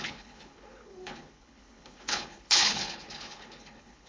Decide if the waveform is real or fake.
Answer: fake